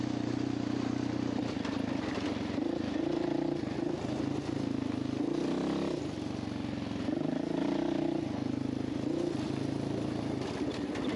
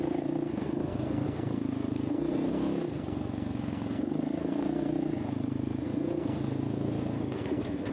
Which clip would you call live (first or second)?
first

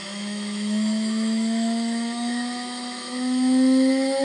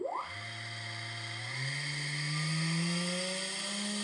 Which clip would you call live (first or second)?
second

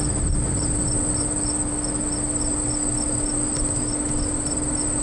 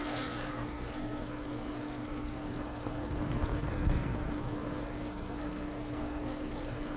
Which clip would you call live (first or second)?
first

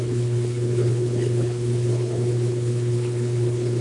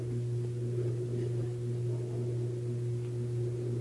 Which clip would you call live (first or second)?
second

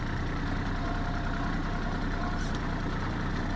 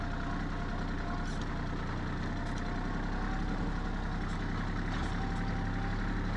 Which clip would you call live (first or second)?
second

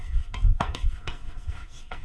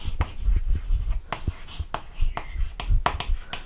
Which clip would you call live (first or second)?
second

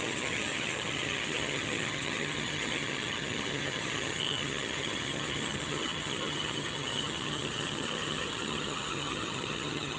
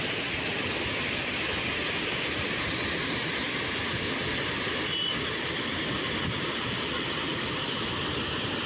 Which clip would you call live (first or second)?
second